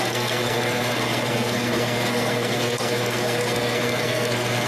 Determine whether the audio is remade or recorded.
remade